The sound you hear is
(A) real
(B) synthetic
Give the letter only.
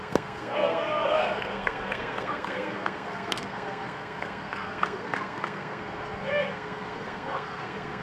B